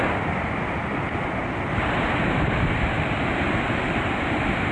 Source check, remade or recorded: remade